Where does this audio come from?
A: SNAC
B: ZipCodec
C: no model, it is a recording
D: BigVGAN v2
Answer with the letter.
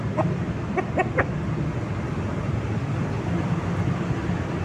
C